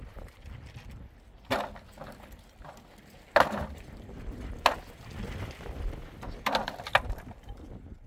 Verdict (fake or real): real